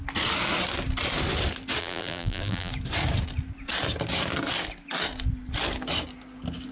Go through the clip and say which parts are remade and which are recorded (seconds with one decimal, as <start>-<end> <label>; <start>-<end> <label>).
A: 0.0-1.8 recorded; 1.8-2.7 remade; 2.7-6.7 recorded